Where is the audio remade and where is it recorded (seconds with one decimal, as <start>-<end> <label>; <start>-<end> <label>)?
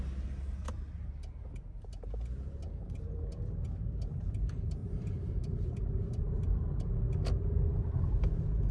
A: 0.0-4.8 recorded; 4.8-6.3 remade; 6.3-8.7 recorded